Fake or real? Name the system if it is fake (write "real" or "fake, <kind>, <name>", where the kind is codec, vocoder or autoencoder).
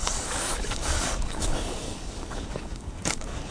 fake, codec, DAC